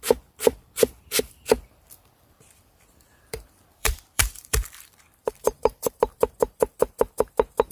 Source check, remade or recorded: remade